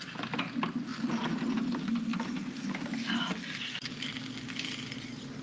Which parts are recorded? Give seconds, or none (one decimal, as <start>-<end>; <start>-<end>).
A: 0.0-5.4